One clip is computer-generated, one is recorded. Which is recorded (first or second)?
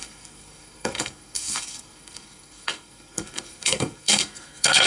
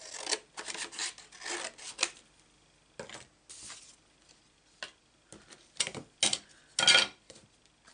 second